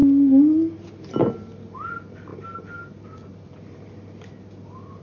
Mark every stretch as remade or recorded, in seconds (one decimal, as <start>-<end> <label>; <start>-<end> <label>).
0.0-5.0 recorded